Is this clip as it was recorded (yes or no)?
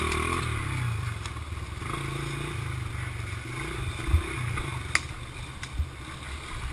yes